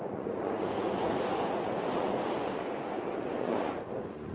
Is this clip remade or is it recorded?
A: remade